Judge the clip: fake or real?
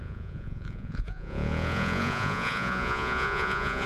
fake